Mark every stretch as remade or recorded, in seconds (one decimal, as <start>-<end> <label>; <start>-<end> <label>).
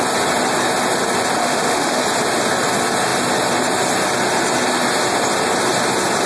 0.0-1.4 recorded; 1.4-2.0 remade; 2.0-6.3 recorded